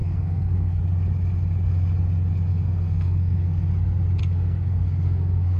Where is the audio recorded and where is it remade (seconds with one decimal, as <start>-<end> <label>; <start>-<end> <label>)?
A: 0.0-0.8 remade; 0.8-2.5 recorded; 2.5-3.7 remade; 3.7-4.2 recorded; 4.2-5.6 remade